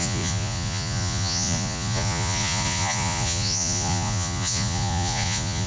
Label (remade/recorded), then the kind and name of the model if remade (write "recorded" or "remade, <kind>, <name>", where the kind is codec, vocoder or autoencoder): remade, vocoder, Vocos